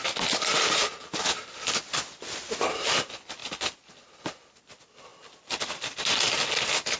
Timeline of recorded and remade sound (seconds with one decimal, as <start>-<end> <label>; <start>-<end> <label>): 0.0-7.0 recorded